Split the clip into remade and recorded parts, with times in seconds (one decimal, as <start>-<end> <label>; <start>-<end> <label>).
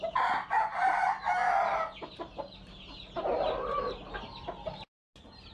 0.0-5.5 recorded